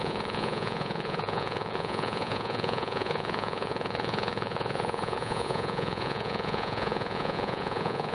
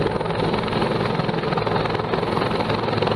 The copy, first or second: first